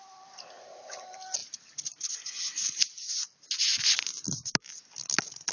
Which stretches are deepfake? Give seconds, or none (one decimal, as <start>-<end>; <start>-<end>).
none